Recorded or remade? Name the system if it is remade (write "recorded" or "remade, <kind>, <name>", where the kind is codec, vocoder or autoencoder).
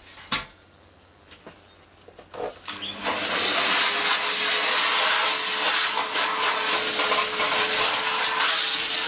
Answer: recorded